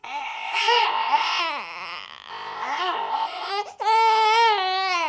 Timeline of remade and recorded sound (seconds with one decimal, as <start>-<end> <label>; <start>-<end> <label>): 0.0-1.4 remade; 1.4-2.3 recorded; 2.3-3.5 remade; 3.5-5.1 recorded